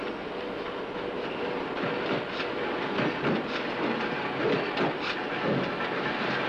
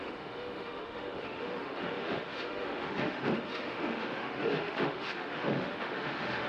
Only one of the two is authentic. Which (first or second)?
first